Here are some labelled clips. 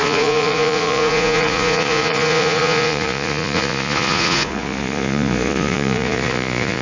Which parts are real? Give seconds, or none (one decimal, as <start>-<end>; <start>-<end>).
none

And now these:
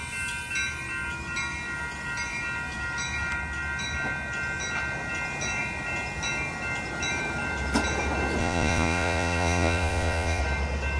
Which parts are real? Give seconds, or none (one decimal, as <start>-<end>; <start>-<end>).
0.0-8.4; 10.4-11.0

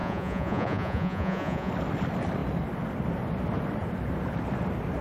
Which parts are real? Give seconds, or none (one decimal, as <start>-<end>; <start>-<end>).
1.7-5.0

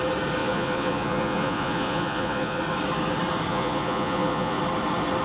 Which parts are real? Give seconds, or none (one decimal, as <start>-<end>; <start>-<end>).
0.0-0.4; 2.6-3.5; 4.6-5.2

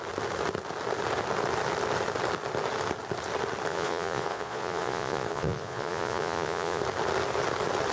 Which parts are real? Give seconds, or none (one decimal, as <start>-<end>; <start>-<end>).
0.0-3.7; 6.8-7.9